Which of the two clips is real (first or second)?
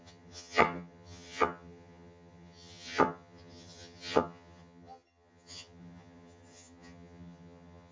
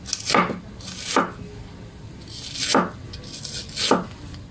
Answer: second